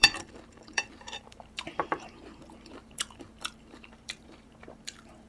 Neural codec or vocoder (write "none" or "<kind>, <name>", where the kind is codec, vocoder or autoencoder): vocoder, BigVGAN v2